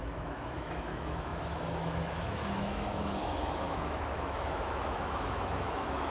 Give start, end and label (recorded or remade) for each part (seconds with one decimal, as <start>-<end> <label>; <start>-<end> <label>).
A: 0.0-6.1 remade